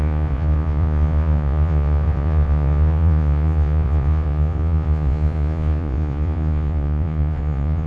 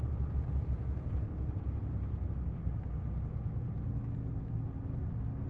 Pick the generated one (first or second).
first